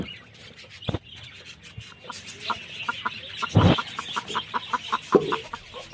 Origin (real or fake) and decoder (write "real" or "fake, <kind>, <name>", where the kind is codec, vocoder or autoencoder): real